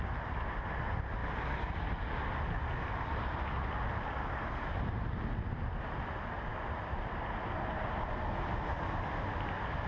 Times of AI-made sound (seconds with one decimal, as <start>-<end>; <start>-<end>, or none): none